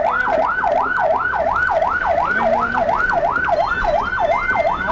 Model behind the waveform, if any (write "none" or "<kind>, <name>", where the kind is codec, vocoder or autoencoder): none